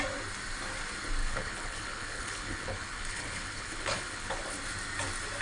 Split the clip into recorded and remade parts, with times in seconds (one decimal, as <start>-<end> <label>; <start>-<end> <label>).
0.0-1.2 recorded; 1.2-4.4 remade; 4.4-5.4 recorded